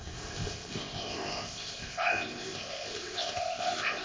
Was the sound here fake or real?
fake